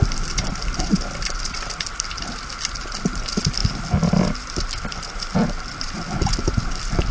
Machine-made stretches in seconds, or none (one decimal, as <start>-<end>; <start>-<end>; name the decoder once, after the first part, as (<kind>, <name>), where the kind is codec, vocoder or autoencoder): none